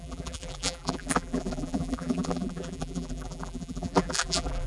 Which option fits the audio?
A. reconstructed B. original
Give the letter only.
A